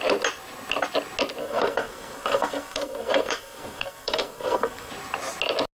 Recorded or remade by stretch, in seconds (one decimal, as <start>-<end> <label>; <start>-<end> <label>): 0.0-1.4 recorded; 1.4-4.9 remade; 4.9-5.8 recorded